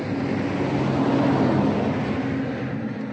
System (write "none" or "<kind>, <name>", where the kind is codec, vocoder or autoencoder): none